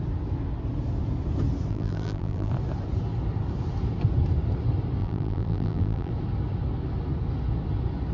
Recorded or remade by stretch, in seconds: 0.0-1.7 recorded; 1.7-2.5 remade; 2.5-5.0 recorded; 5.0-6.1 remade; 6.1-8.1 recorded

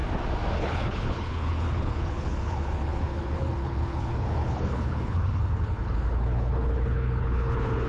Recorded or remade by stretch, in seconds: 0.0-0.6 recorded; 0.6-7.9 remade